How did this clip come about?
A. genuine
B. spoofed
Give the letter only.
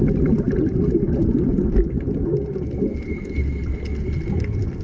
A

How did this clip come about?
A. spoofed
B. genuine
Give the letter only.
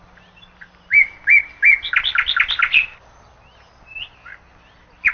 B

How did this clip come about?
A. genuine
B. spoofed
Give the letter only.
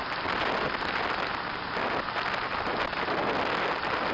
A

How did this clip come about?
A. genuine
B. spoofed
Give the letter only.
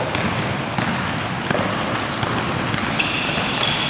A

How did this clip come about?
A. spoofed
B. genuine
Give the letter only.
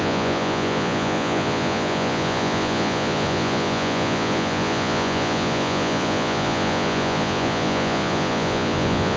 A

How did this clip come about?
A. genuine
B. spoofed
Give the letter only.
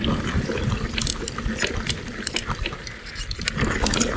A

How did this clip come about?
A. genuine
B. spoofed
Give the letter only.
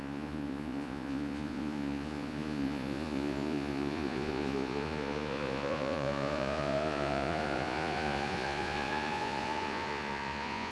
B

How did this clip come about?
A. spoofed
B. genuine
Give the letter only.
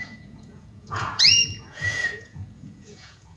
A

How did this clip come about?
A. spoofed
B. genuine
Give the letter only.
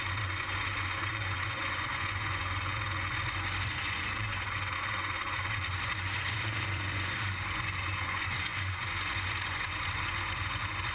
A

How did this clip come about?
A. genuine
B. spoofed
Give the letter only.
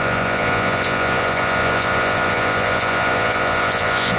B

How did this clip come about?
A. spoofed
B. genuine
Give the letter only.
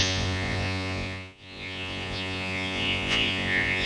A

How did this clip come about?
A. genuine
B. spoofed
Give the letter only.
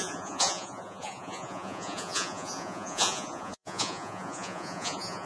B